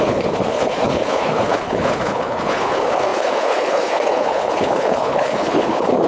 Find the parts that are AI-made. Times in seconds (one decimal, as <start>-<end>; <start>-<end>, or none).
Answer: 0.0-6.1